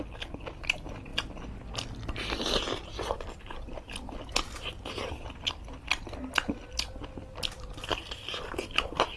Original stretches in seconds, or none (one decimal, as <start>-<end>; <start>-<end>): 0.0-9.2